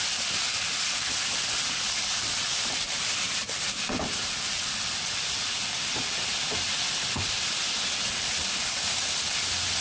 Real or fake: real